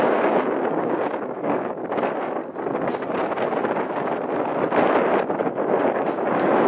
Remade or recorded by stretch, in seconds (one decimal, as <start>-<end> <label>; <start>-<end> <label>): 0.0-1.8 remade; 1.8-5.8 recorded; 5.8-6.7 remade